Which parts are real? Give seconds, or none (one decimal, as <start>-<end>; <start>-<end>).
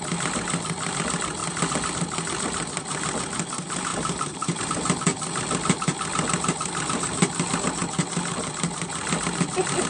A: 0.0-3.9; 4.6-9.9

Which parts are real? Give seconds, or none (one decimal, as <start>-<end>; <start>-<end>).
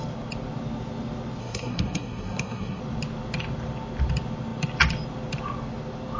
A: 0.0-1.4; 2.8-6.2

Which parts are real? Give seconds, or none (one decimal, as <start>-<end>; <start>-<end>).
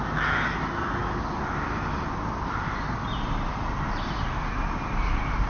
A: 0.0-5.5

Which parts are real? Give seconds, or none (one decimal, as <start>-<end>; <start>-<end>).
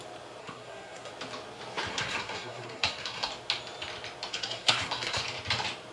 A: 0.0-0.4; 1.1-1.9; 3.3-4.3; 5.2-5.9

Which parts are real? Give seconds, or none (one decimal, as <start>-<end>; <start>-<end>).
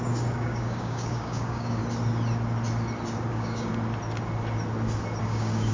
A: 1.8-3.3; 3.7-5.2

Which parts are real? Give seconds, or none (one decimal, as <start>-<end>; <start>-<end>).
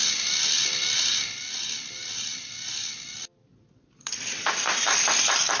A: 0.0-5.6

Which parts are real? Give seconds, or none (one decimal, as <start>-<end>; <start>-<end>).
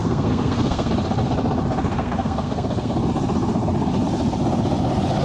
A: 0.9-1.9; 2.9-5.2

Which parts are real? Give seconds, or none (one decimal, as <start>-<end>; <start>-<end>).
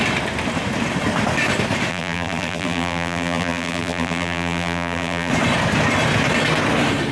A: 0.0-1.9; 5.3-7.1